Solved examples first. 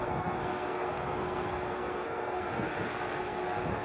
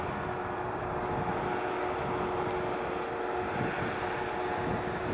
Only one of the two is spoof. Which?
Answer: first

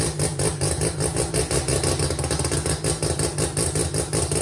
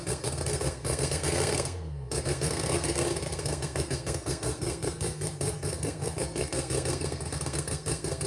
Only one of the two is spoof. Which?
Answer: second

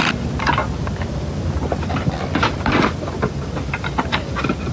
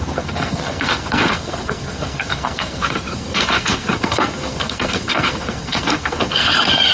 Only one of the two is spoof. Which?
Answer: second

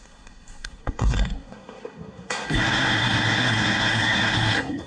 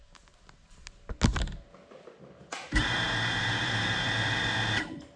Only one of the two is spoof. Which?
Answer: first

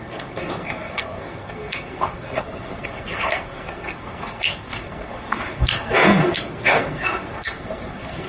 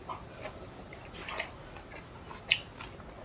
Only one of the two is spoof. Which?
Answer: first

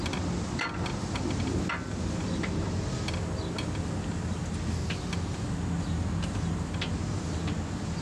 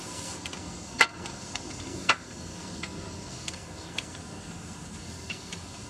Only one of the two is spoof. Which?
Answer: second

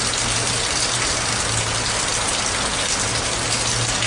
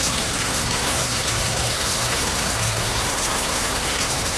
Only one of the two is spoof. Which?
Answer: second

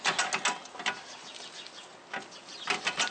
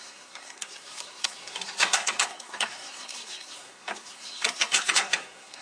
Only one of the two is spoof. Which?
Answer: second